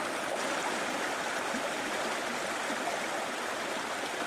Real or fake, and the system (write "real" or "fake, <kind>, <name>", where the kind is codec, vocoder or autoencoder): real